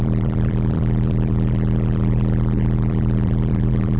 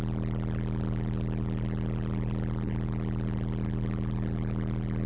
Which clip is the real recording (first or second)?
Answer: second